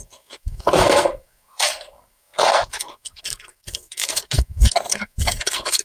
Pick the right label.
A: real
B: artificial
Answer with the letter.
B